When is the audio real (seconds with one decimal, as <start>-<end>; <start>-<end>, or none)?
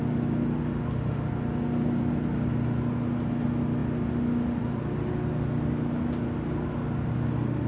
0.0-7.7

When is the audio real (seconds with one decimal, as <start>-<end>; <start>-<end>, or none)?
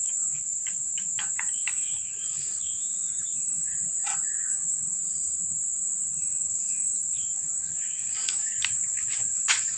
3.7-4.5; 5.0-6.1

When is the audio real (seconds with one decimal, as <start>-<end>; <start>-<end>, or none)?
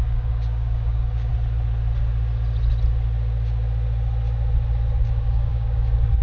1.3-5.0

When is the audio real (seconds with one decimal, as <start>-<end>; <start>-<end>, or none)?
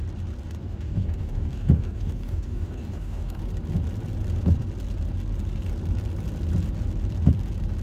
0.0-0.6; 3.4-7.8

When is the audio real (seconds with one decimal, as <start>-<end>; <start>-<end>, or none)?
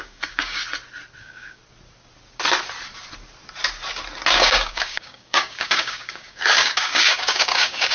0.6-1.2; 1.6-4.3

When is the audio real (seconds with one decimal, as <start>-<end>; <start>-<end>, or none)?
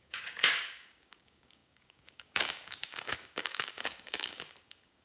none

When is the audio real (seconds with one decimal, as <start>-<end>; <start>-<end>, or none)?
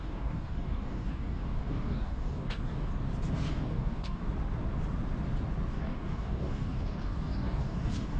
2.9-3.5; 4.2-5.7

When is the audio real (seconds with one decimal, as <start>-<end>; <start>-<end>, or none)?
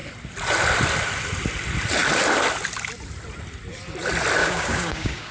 0.0-4.4